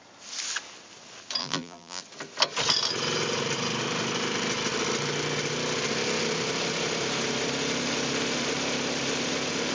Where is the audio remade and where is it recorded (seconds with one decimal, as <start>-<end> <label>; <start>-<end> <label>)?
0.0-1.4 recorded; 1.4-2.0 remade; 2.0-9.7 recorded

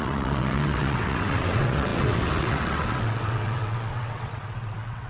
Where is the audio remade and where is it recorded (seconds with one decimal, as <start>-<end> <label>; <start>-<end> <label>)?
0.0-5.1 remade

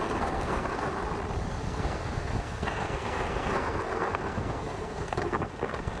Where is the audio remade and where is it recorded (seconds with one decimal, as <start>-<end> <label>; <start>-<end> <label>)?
0.0-0.9 remade; 0.9-1.5 recorded; 1.5-6.0 remade

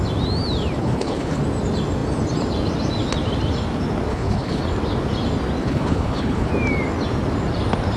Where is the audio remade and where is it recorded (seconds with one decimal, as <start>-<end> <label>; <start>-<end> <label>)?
0.0-0.8 recorded; 0.8-1.4 remade; 1.4-4.1 recorded; 4.1-4.6 remade; 4.6-5.6 recorded; 5.6-6.5 remade; 6.5-8.0 recorded

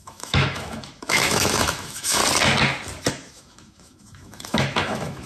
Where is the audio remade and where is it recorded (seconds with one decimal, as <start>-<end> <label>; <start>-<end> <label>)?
0.0-2.2 remade; 2.2-3.1 recorded; 3.1-5.3 remade